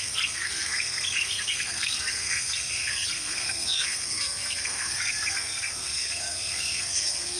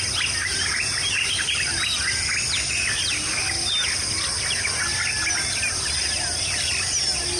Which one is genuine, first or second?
second